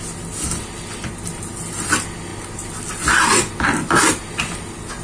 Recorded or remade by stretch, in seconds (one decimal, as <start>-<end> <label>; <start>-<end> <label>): 0.0-5.0 recorded